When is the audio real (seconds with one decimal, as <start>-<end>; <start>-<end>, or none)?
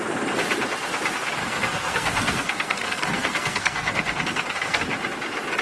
0.0-1.4; 4.8-5.6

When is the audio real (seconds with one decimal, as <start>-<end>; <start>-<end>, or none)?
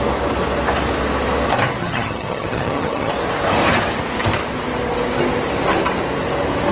0.0-1.8; 3.1-6.7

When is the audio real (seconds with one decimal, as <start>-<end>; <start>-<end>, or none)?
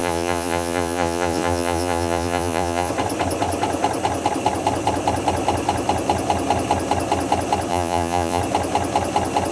2.9-7.7; 8.4-9.5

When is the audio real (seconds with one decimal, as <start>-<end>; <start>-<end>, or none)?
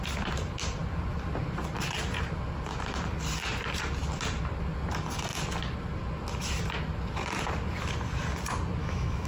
0.0-8.8